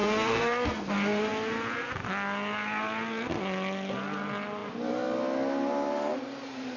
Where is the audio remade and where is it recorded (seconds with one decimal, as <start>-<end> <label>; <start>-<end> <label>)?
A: 0.0-0.9 remade; 0.9-6.8 recorded